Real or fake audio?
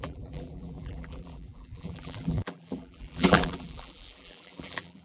fake